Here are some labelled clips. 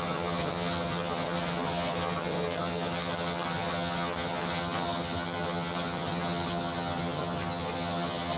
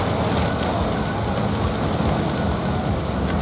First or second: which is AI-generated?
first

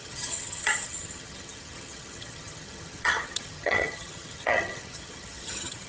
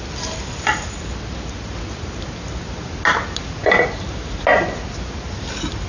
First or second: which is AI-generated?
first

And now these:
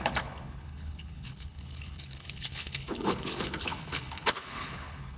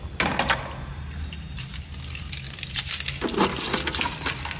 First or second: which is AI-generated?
first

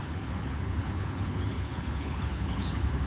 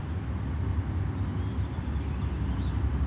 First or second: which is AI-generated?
first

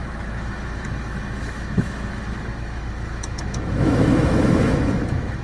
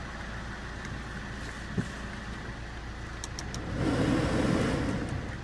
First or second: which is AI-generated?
first